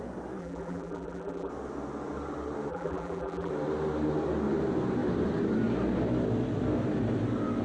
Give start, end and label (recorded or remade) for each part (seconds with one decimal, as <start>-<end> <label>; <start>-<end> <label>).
0.0-0.4 recorded; 0.4-1.5 remade; 1.5-2.7 recorded; 2.7-3.5 remade; 3.5-7.6 recorded